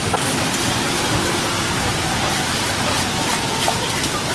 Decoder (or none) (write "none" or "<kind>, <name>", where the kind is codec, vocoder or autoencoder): none